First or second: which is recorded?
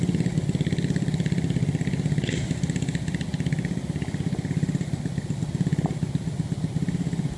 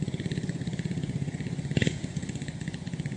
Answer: first